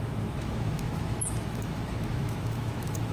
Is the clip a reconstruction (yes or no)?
yes